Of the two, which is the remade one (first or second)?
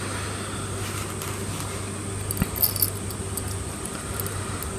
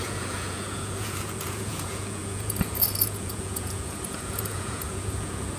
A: second